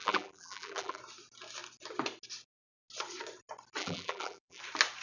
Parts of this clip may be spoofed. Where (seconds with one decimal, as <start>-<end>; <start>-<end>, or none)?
0.0-1.0; 3.8-4.6